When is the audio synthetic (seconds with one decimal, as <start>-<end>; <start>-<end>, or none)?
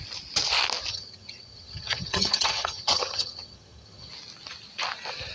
0.9-4.1